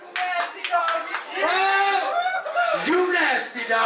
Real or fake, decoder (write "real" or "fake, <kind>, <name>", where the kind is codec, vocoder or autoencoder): real